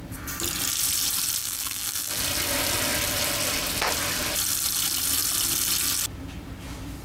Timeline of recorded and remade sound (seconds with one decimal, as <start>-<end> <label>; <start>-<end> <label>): 0.0-1.4 recorded; 1.4-2.2 remade; 2.2-7.0 recorded